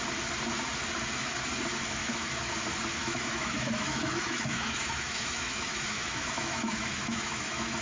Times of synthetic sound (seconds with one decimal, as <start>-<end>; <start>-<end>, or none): 2.0-2.5; 3.0-7.8